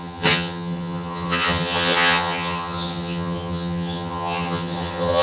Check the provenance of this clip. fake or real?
fake